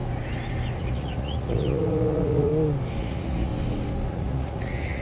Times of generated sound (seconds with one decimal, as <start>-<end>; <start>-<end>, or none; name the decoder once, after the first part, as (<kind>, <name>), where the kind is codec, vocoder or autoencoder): 0.8-2.5 (vocoder, Vocos); 3.0-3.5; 4.1-5.0